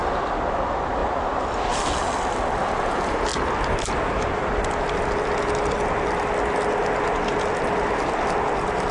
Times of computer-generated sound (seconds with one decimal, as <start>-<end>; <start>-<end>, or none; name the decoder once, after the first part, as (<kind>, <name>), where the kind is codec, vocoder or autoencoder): none